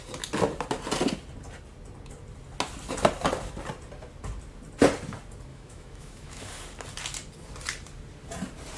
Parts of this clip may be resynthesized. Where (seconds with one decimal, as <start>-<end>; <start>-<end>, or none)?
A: 5.5-6.5